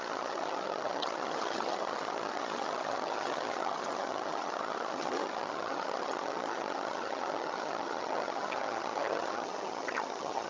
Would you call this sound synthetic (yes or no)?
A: yes